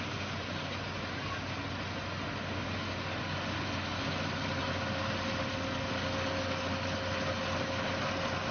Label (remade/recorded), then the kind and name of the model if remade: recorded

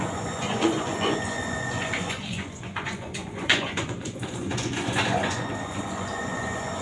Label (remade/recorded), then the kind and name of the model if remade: remade, vocoder, Vocos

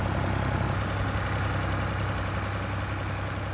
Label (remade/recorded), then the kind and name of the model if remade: recorded